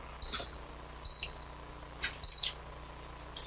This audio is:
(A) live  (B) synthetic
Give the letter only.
A